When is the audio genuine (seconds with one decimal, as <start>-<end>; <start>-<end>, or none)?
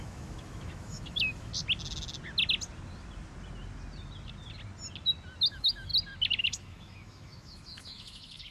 1.5-5.5; 5.9-6.4